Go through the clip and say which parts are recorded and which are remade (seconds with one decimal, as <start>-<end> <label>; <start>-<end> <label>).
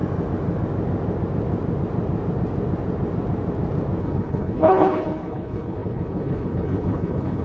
0.0-4.0 recorded; 4.0-7.4 remade